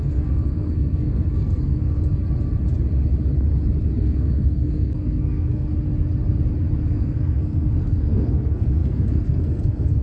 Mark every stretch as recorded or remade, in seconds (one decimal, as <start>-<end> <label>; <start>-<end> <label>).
0.0-2.2 remade; 2.2-4.0 recorded; 4.0-5.7 remade; 5.7-6.9 recorded; 6.9-10.0 remade